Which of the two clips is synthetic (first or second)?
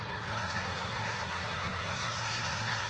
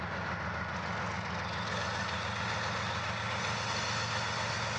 first